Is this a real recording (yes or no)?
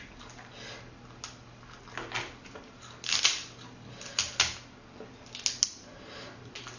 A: yes